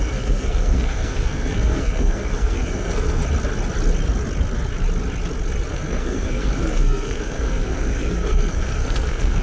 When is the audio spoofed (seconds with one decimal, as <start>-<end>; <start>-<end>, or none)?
0.0-3.2; 5.7-9.4